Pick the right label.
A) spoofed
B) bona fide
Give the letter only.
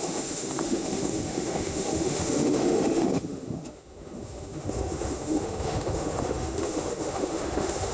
A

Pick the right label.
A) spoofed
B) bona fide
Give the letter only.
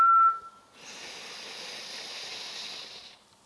B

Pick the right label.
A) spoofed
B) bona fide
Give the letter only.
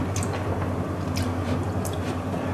B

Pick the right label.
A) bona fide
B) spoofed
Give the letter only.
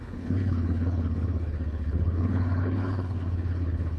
B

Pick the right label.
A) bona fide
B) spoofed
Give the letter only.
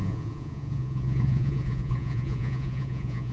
B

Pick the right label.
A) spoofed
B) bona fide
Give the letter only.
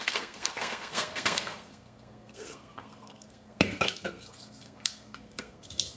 A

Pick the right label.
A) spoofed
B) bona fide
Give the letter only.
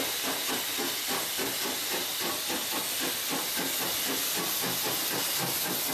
B